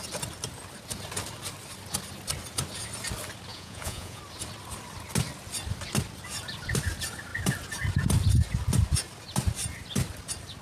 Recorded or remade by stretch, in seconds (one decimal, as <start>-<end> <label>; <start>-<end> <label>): 0.0-3.5 recorded; 3.5-4.2 remade; 4.2-10.6 recorded